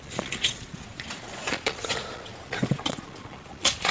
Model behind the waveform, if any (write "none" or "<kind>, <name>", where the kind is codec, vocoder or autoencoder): vocoder, Vocos